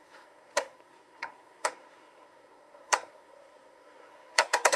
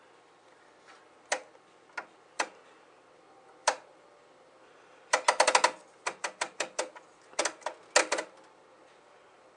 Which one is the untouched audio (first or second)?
second